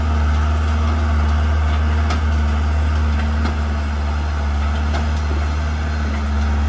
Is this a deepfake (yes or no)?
no